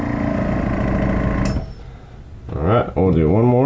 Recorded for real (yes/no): yes